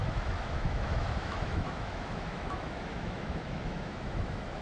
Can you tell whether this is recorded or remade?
remade